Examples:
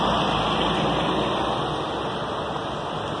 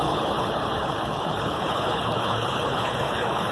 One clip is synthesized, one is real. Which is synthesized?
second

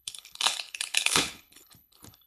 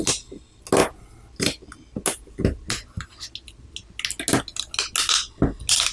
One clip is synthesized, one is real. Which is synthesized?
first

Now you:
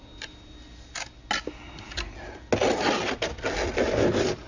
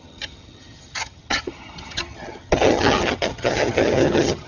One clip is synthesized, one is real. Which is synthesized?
second